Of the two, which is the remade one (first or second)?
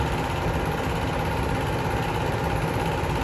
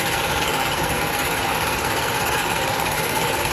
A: second